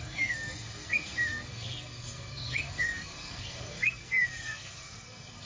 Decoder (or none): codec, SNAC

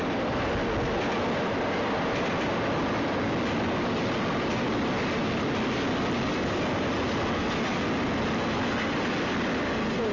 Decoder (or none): none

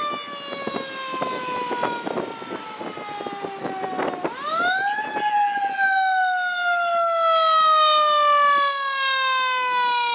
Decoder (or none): none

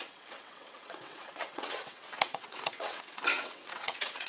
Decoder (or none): vocoder, WaveNeXt